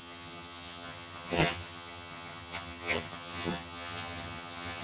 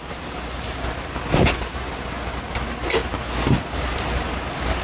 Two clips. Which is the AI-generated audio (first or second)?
first